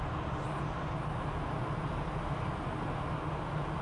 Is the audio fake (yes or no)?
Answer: no